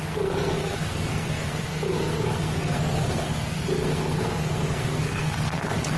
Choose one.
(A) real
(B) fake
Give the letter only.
B